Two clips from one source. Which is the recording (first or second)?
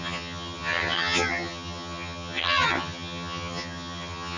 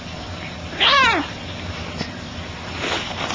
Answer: second